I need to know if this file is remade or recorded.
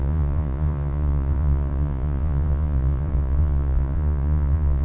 remade